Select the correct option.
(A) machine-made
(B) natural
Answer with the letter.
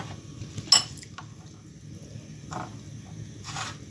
B